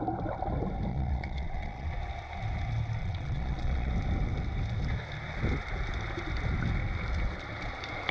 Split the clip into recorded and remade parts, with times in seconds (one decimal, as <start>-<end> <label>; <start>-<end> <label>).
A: 0.0-0.9 recorded; 0.9-1.9 remade; 1.9-3.0 recorded; 3.0-3.9 remade; 3.9-8.1 recorded